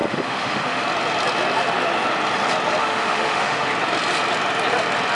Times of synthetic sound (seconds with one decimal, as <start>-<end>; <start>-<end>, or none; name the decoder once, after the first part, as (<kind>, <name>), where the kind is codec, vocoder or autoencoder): 0.0-0.8 (autoencoder, DAC-VAE); 2.8-3.7